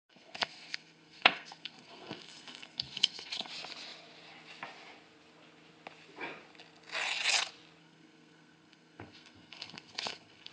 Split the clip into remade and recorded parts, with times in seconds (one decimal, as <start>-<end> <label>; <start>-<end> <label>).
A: 0.0-3.5 remade; 3.5-7.8 recorded; 7.8-10.5 remade